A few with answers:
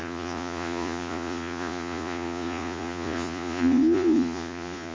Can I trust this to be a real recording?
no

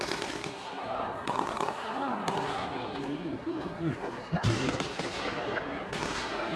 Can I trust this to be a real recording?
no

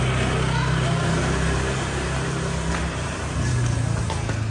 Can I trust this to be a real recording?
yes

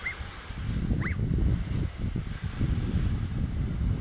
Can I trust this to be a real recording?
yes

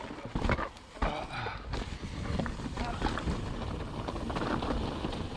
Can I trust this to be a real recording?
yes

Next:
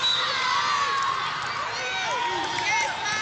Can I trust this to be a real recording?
yes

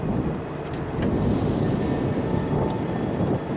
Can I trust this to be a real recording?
yes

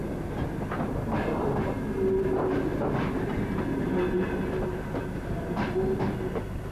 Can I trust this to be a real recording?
yes